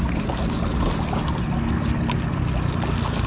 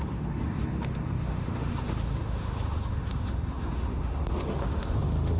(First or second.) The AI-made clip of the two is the second